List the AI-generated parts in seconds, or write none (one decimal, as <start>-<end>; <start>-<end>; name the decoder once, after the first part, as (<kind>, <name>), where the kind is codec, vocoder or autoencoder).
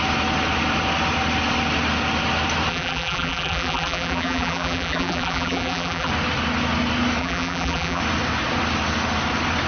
2.7-6.1 (vocoder, BigVGAN v2); 7.2-8.0